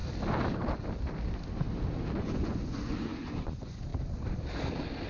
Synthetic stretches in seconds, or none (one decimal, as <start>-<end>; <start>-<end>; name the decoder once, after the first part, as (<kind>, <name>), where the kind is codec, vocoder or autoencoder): 2.2-3.9 (vocoder, Vocos)